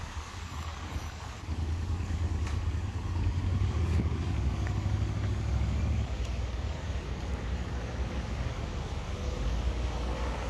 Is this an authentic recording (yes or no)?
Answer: no